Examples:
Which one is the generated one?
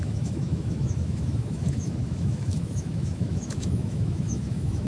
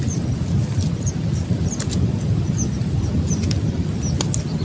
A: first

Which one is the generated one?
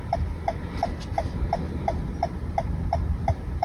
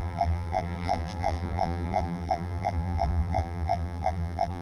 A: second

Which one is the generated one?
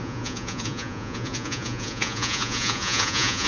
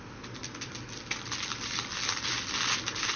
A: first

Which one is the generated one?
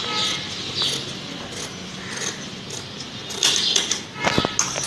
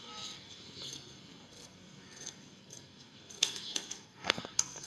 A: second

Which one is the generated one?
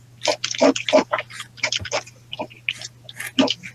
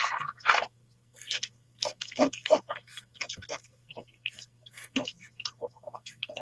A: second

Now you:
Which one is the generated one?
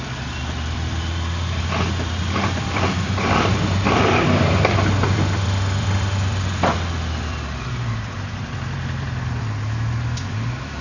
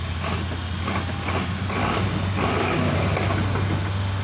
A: first